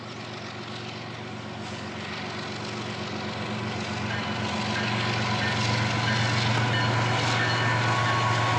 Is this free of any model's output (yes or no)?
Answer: yes